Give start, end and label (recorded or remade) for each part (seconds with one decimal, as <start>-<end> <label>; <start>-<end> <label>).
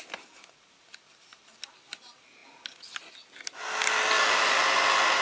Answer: 0.0-5.2 recorded